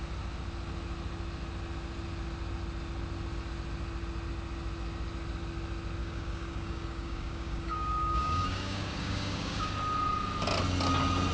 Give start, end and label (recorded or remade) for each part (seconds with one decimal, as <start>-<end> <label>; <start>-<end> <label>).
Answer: 0.0-6.0 recorded; 6.0-9.7 remade; 9.7-11.3 recorded